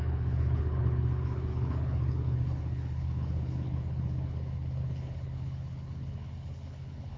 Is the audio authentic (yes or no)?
no